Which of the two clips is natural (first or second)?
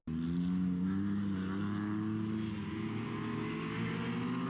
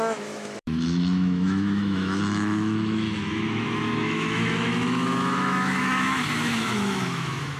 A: first